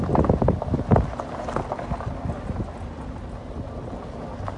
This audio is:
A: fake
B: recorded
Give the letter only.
B